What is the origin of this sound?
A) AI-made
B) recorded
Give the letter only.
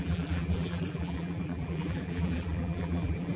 A